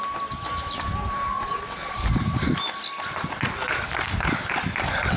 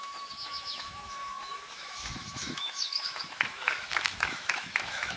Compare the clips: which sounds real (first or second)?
first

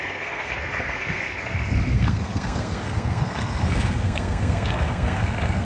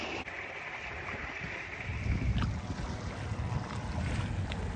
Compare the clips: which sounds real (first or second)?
second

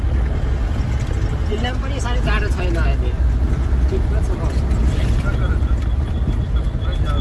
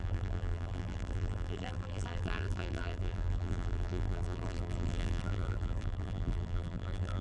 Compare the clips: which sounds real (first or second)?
first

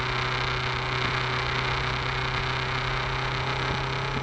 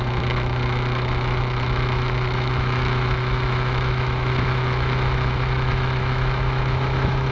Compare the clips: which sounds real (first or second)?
first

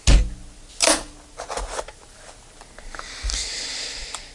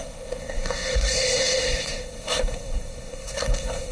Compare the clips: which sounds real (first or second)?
first